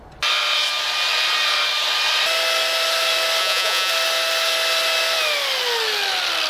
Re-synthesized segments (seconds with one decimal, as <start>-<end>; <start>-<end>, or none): 3.4-3.9